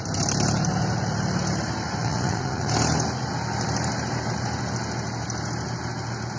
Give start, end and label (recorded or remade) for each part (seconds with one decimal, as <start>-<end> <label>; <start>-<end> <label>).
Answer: 0.0-2.0 recorded; 2.0-2.7 remade; 2.7-6.4 recorded